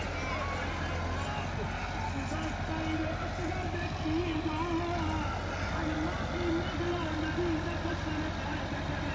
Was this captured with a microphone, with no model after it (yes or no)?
yes